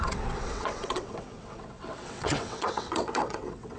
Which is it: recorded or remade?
remade